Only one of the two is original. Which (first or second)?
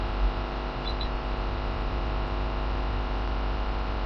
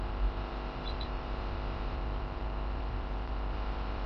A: first